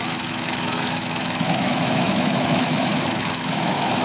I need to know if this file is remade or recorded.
remade